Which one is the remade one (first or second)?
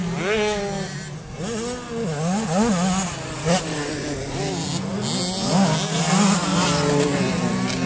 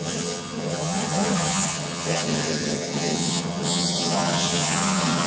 second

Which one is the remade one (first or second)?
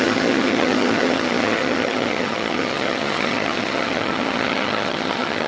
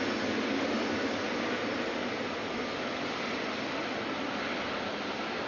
first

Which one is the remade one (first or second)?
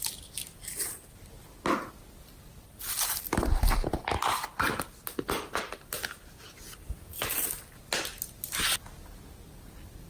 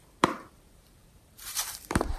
second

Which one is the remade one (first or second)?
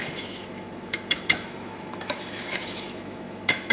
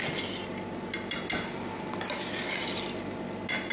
first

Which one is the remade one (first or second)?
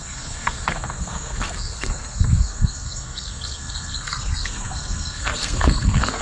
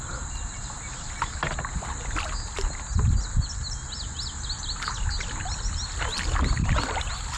first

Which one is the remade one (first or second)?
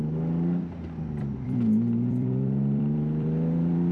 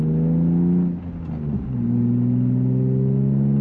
first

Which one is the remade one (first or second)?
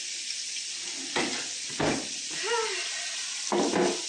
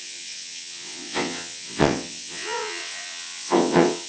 second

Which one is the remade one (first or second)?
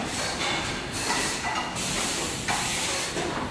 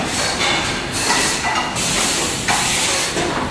first